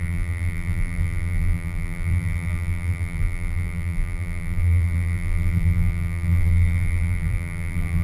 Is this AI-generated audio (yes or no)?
yes